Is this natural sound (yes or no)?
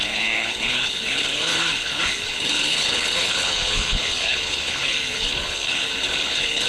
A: no